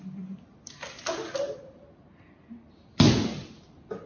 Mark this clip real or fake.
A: real